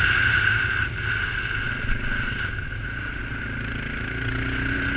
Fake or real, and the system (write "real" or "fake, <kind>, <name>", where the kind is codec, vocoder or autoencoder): real